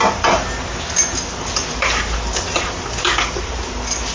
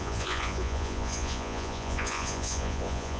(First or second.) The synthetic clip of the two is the second